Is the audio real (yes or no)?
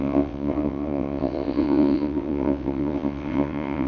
no